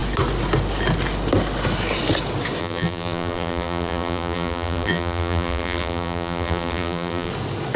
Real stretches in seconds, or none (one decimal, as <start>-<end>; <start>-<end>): 0.0-2.6; 7.3-7.8